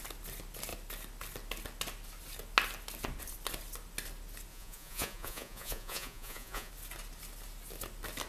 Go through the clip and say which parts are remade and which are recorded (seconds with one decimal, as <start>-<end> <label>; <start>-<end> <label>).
0.0-4.5 recorded; 4.5-6.7 remade; 6.7-8.3 recorded